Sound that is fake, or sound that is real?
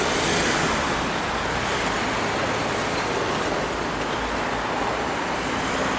real